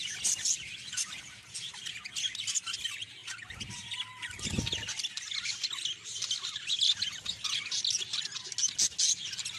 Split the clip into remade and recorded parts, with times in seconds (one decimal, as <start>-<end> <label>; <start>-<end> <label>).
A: 0.0-9.6 recorded

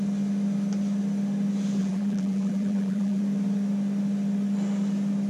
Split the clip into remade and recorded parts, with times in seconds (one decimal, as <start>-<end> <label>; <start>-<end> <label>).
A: 0.0-1.8 recorded; 1.8-3.2 remade; 3.2-5.3 recorded

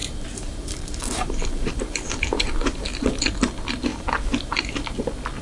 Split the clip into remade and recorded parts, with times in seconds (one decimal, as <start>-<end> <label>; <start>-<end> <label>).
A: 0.0-3.2 remade; 3.2-3.9 recorded; 3.9-4.6 remade; 4.6-5.4 recorded

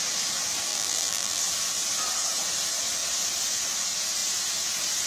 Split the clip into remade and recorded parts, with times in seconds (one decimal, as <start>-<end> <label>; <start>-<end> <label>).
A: 0.0-0.7 recorded; 0.7-1.4 remade; 1.4-5.1 recorded